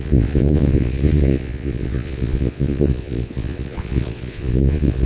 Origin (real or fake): fake